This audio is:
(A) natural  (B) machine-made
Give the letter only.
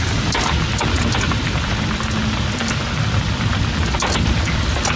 A